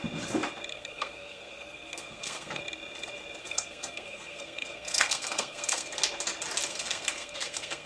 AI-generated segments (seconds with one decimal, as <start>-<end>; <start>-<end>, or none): 0.7-2.6; 3.4-6.0; 6.7-7.9